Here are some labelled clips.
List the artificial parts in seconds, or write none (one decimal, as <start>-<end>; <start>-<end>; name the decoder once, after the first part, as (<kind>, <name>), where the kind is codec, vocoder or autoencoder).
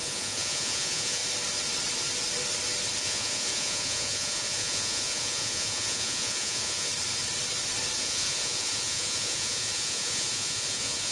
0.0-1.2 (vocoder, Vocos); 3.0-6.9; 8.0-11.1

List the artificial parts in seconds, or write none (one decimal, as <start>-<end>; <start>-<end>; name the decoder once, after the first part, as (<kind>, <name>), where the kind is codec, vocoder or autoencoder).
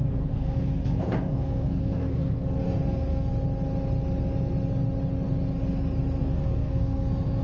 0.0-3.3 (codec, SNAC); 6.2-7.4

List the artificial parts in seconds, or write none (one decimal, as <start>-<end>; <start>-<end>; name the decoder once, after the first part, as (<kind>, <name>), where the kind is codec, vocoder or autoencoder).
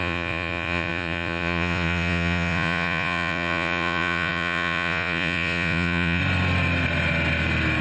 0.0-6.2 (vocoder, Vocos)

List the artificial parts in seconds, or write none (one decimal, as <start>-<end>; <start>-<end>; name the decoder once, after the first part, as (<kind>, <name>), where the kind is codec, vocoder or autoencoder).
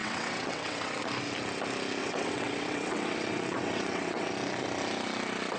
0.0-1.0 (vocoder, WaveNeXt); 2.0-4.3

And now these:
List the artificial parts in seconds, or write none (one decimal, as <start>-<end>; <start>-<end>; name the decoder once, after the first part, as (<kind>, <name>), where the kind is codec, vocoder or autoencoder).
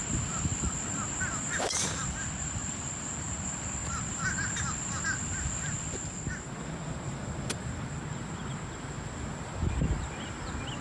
0.0-2.6 (vocoder, BigVGAN v2); 3.2-3.8; 8.1-9.5; 10.0-10.8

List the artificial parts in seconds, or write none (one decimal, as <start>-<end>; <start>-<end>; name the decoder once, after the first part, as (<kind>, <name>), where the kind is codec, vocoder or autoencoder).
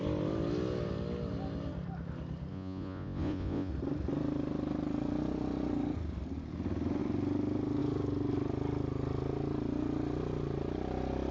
2.5-3.7 (vocoder, Vocos)